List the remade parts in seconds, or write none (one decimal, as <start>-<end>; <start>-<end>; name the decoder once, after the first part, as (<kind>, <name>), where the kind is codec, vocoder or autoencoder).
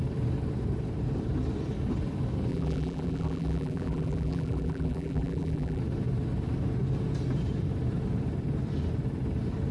2.5-5.8 (vocoder, BigVGAN v2)